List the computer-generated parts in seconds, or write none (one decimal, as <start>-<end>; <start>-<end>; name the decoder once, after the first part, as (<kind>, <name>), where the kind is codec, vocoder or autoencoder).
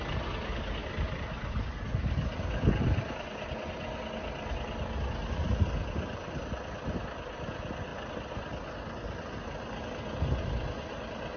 0.8-3.5 (vocoder, BigVGAN v2)